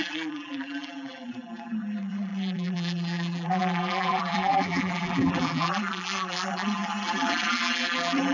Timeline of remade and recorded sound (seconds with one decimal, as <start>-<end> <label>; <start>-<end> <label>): 0.0-8.3 remade